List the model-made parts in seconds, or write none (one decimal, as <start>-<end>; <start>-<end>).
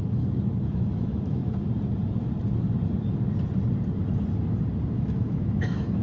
0.0-1.4; 4.9-6.0